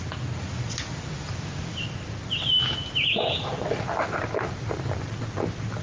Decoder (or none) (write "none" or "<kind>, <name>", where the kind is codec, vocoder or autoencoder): none